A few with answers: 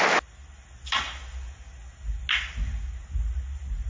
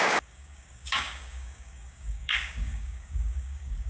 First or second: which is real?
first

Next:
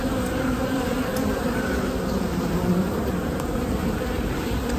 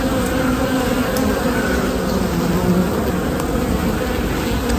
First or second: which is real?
second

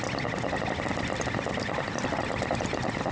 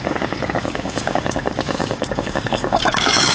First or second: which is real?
first